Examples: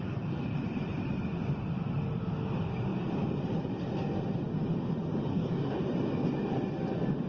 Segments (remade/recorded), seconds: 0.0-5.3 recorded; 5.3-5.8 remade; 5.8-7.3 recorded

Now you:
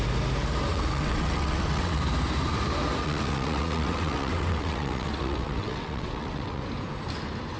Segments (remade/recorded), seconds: 0.0-0.7 recorded; 0.7-2.0 remade; 2.0-3.0 recorded; 3.0-6.6 remade; 6.6-7.6 recorded

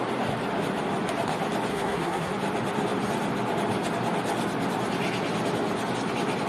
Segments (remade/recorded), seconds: 0.0-1.7 recorded; 1.7-2.3 remade; 2.3-6.5 recorded

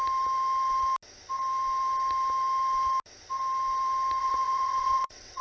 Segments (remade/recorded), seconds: 0.0-4.2 recorded; 4.2-5.4 remade

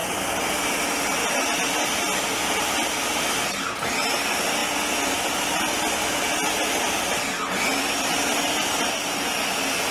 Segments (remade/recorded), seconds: 0.0-9.9 recorded

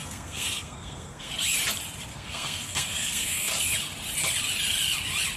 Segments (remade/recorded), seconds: 0.0-1.3 remade; 1.3-2.1 recorded; 2.1-3.5 remade; 3.5-5.4 recorded

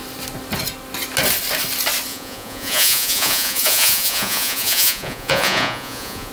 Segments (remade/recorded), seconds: 0.0-2.1 recorded; 2.1-6.3 remade